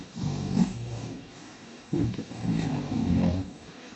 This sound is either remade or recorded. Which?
remade